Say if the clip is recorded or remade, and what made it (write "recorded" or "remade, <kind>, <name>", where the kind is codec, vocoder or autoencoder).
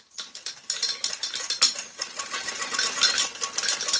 recorded